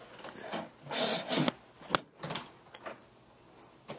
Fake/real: real